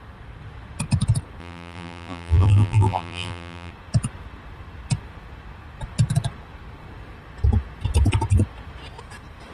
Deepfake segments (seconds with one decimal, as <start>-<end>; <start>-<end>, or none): 1.4-3.7

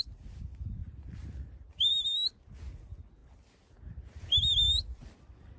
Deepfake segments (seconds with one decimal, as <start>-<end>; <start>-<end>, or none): none

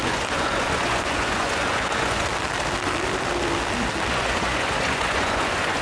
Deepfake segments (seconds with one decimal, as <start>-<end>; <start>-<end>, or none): 0.0-2.3; 4.1-5.8

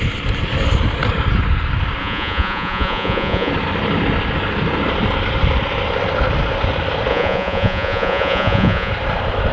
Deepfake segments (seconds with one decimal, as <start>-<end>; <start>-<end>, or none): 2.0-3.5; 7.1-8.9

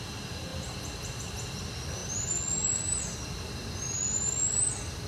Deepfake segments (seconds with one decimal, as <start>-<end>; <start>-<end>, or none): none

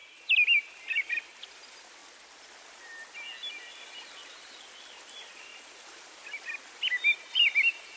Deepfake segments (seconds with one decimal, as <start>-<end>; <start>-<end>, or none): 1.2-2.0; 3.7-5.5; 6.2-8.0